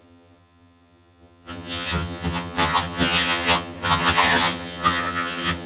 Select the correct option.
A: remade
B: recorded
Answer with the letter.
A